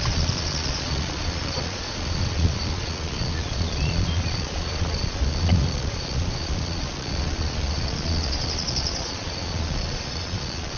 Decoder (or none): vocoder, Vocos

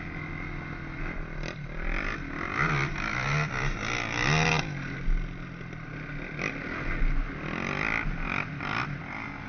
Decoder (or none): none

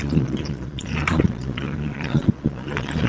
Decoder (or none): vocoder, Vocos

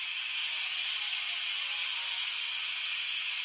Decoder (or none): none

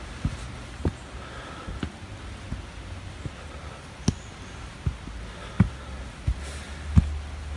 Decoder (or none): none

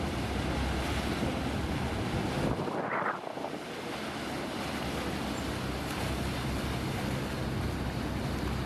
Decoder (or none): none